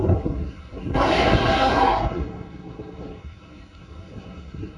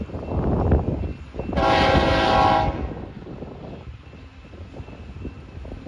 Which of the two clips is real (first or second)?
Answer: second